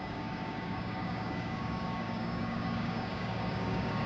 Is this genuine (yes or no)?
no